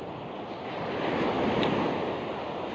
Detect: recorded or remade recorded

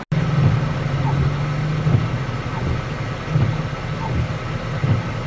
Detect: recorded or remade recorded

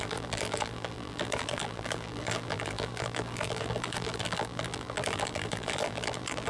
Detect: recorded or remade remade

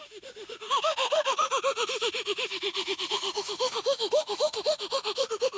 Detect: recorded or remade remade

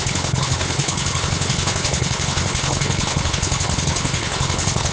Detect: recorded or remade remade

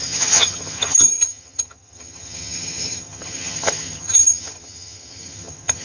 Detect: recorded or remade remade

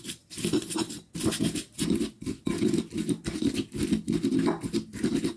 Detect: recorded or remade recorded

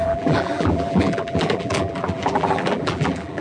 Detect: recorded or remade remade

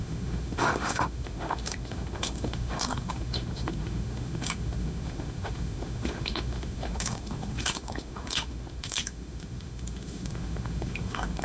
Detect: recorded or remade remade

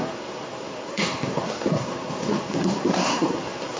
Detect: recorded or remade remade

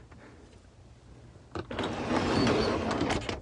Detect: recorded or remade recorded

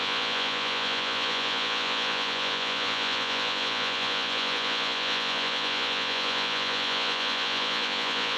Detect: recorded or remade remade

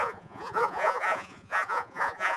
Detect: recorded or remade remade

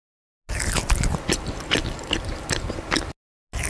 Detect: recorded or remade recorded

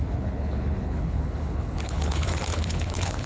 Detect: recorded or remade remade